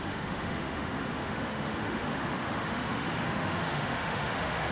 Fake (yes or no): yes